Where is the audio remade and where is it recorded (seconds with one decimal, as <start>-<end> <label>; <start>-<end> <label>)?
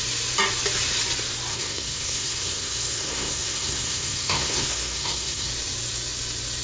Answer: 0.0-1.5 recorded; 1.5-5.5 remade; 5.5-6.6 recorded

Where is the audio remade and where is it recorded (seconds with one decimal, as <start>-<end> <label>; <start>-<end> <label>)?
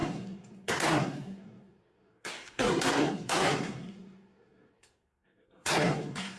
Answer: 0.0-6.4 remade